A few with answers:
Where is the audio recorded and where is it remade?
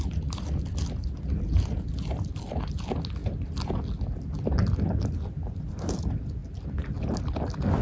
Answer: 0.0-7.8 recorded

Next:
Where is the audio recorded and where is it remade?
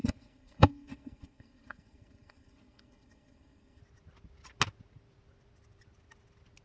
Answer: 0.0-3.8 remade; 3.8-6.6 recorded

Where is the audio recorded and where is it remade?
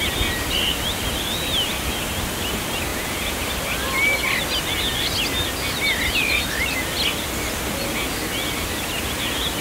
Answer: 0.0-2.9 recorded; 2.9-3.4 remade; 3.4-9.6 recorded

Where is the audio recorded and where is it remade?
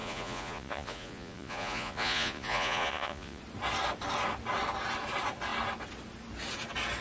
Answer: 0.0-3.4 remade; 3.4-7.0 recorded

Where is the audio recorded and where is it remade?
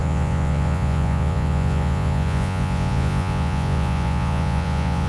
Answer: 0.0-5.1 remade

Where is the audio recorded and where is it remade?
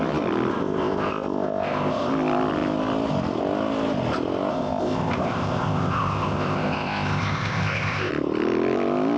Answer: 0.0-0.5 recorded; 0.5-2.1 remade; 2.1-4.5 recorded; 4.5-8.1 remade; 8.1-9.2 recorded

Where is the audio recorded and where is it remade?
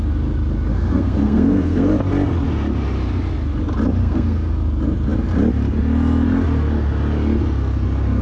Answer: 0.0-0.7 recorded; 0.7-1.9 remade; 1.9-4.0 recorded; 4.0-4.5 remade; 4.5-8.2 recorded